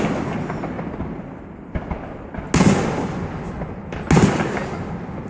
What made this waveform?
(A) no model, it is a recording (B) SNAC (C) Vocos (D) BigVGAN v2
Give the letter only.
A